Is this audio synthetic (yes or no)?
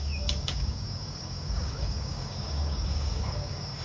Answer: yes